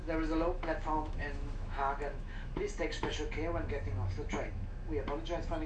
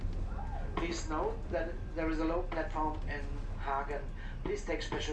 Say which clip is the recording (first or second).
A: second